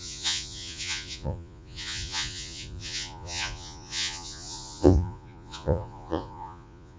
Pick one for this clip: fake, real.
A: fake